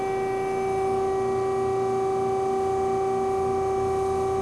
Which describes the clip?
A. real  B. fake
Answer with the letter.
A